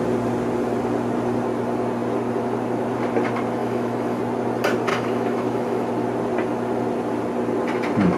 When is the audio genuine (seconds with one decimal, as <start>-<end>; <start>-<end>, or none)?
0.0-3.6; 4.2-4.9; 5.9-8.2